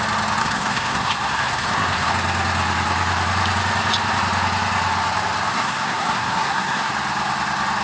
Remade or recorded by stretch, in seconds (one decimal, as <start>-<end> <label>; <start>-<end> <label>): 0.0-0.4 recorded; 0.4-2.1 remade; 2.1-5.5 recorded; 5.5-6.9 remade; 6.9-7.8 recorded